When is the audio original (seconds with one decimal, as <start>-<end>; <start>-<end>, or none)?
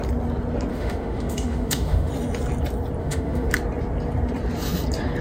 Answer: 0.0-0.7; 2.1-3.0; 3.5-5.2